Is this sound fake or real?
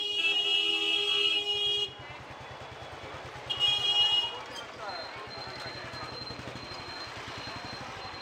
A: real